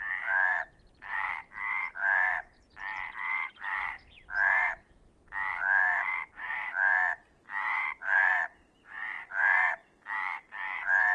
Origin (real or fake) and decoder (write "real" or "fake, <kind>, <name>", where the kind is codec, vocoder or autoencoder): fake, vocoder, BigVGAN v2